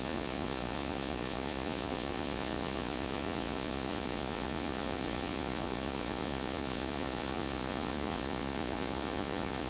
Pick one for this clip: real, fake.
fake